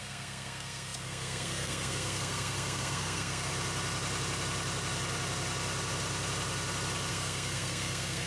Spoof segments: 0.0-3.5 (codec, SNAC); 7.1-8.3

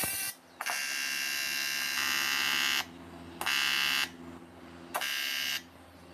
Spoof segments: none

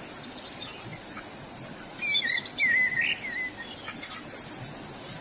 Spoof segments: none

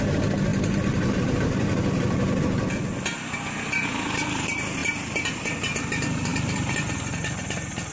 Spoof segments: 4.8-5.3 (vocoder, BigVGAN v2); 6.3-7.5

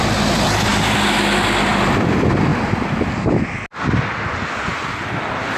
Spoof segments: 4.7-5.6 (vocoder, BigVGAN v2)

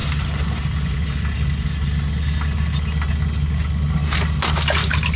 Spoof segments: none

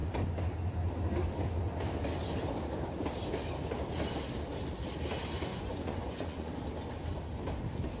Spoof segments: 5.5-6.5 (vocoder, Vocos)